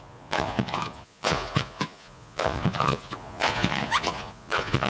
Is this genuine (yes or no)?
no